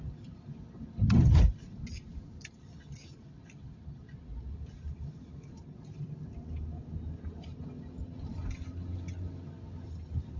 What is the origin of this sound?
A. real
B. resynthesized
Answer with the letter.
A